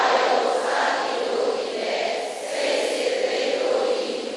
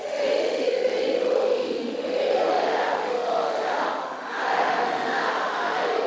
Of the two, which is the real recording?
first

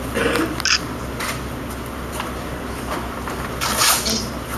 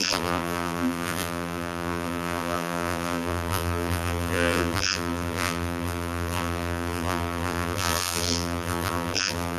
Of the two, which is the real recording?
first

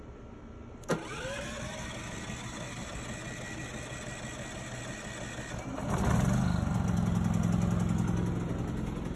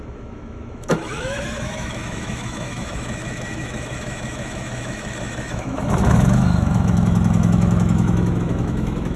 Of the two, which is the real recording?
first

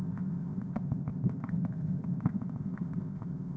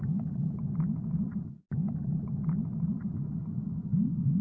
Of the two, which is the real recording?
second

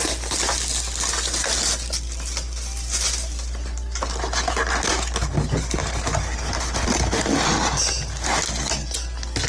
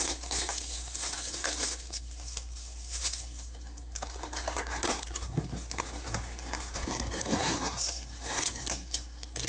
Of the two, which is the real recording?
first